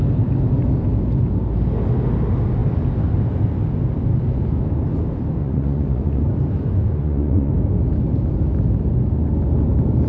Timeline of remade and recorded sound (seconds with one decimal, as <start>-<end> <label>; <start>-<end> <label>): 0.0-5.4 recorded; 5.4-6.2 remade; 6.2-6.8 recorded; 6.8-7.5 remade; 7.5-10.1 recorded